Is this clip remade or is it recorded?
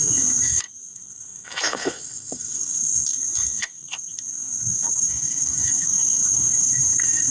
remade